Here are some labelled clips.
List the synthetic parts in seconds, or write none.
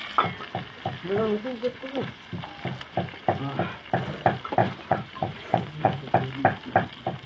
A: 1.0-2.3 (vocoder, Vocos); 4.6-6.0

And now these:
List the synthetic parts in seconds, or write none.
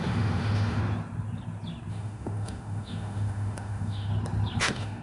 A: 0.0-0.8 (autoencoder, DAC-VAE); 1.9-4.1; 4.6-5.0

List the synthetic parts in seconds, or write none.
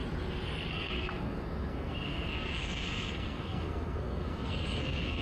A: 0.7-5.2 (codec, SNAC)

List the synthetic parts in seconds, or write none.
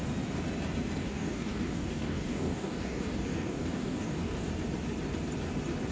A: 1.0-4.5 (codec, DAC)